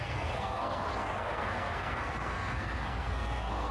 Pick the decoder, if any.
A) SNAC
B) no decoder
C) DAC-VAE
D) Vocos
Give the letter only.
A